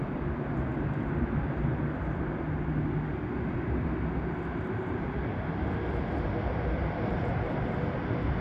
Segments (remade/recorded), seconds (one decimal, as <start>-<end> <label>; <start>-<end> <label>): 0.0-6.8 recorded; 6.8-7.3 remade; 7.3-8.4 recorded